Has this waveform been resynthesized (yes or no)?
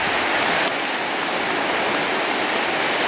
no